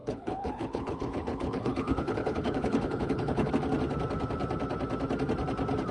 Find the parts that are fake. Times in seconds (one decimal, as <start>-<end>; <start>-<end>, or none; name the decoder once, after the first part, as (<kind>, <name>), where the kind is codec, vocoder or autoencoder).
0.0-3.5 (codec, HILCodec)